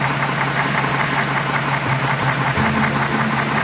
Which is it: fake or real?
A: real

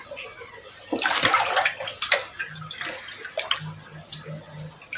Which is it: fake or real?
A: real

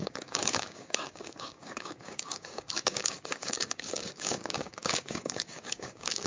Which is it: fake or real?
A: fake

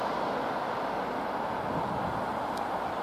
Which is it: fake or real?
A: real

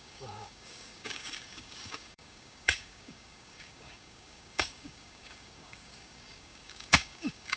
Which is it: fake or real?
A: fake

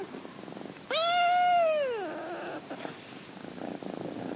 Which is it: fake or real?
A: real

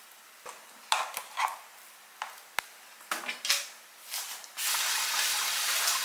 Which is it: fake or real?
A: real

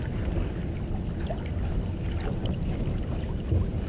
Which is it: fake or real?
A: real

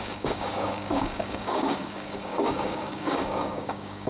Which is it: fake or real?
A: fake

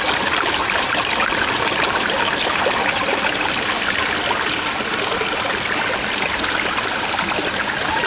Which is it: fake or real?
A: real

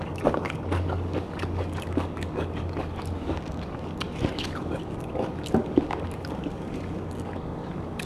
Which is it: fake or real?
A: fake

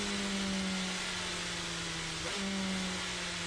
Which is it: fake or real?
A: real